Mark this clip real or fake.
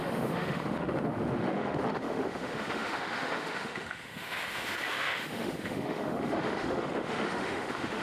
fake